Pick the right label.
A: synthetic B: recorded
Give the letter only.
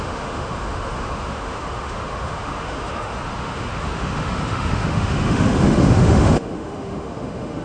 A